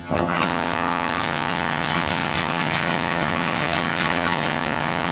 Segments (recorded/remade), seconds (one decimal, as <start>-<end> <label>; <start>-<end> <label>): 0.0-5.1 remade